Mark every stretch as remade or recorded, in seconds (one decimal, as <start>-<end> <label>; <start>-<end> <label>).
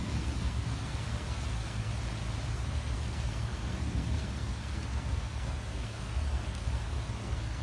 0.0-1.9 remade; 1.9-2.5 recorded; 2.5-7.6 remade